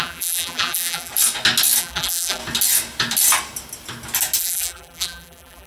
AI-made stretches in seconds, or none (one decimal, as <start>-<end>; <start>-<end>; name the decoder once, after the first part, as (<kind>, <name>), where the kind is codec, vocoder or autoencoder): 0.0-1.1 (vocoder, BigVGAN v2); 1.8-2.4; 4.4-5.7